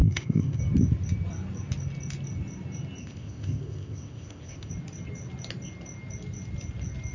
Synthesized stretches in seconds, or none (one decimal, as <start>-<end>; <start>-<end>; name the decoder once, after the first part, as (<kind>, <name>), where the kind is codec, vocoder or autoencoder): 0.0-0.6 (codec, ZipCodec); 3.0-4.7